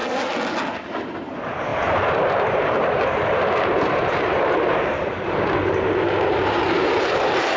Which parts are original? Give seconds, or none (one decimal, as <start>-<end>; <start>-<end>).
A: 0.0-1.1